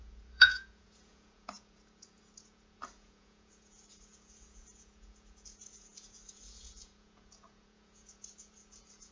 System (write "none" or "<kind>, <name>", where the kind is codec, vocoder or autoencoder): vocoder, Vocos